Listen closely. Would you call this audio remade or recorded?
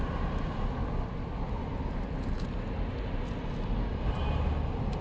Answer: recorded